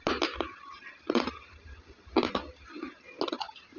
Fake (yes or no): no